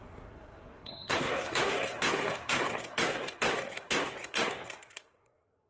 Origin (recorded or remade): remade